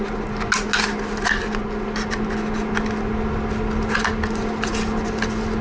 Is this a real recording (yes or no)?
yes